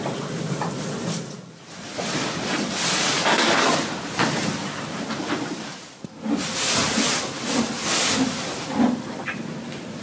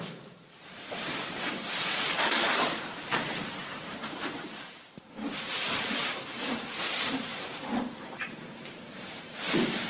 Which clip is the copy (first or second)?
second